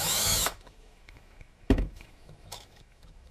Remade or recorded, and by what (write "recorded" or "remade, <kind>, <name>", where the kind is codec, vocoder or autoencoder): remade, autoencoder, DAC-VAE